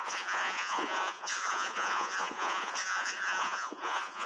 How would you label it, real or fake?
fake